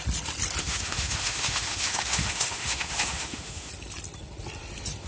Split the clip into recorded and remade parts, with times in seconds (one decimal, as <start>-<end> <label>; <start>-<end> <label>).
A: 0.0-0.6 recorded; 0.6-3.7 remade; 3.7-5.1 recorded